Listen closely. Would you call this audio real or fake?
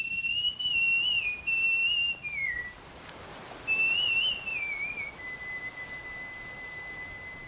real